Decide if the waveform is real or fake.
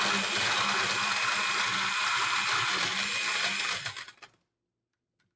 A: real